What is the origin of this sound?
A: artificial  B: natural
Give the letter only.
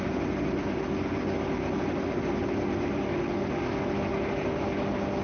B